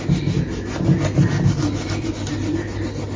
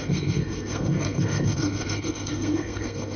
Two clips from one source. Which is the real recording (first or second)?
first